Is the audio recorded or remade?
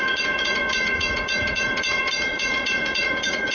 remade